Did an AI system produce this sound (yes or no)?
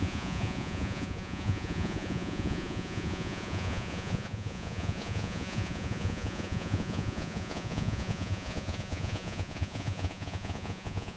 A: yes